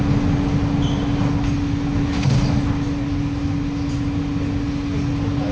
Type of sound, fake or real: real